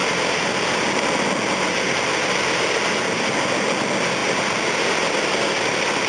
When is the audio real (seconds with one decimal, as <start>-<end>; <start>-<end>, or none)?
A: 0.0-6.1